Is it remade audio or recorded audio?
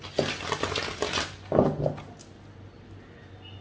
recorded